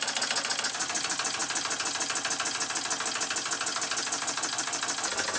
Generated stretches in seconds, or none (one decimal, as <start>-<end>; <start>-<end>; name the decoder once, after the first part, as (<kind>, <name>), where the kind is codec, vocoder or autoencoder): none